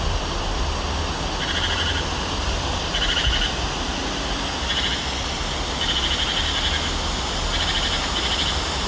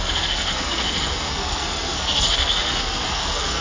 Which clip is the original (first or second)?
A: first